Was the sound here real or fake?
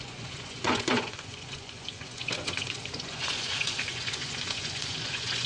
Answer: fake